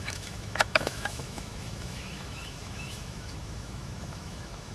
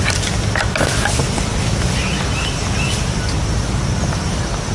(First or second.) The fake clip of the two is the first